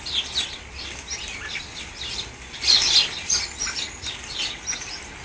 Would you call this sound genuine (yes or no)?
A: yes